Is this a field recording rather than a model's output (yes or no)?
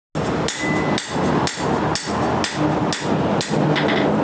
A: yes